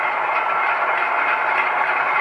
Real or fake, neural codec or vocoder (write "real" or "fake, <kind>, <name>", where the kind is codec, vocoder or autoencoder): real